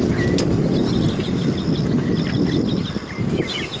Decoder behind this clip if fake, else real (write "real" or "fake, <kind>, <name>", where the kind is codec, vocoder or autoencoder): real